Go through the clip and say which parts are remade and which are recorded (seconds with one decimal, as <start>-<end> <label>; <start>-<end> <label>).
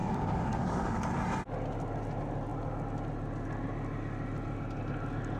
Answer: 0.0-1.2 remade; 1.2-5.4 recorded